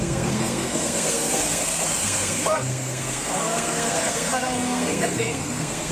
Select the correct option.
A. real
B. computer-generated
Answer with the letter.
B